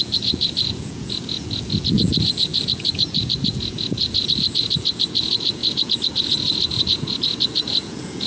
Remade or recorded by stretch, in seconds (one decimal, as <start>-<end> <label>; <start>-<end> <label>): 0.0-8.3 remade